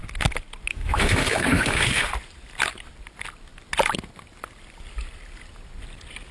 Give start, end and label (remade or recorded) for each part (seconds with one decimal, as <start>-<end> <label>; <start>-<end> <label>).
0.0-0.7 recorded; 0.7-2.1 remade; 2.1-6.3 recorded